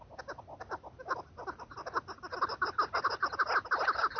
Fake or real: real